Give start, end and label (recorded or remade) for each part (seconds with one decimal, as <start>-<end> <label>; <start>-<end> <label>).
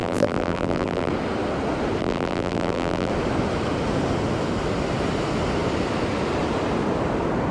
0.0-1.1 remade; 1.1-2.0 recorded; 2.0-3.1 remade; 3.1-7.5 recorded